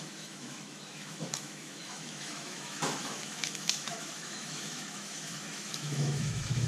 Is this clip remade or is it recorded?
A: remade